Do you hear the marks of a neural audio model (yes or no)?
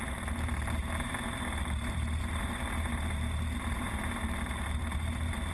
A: yes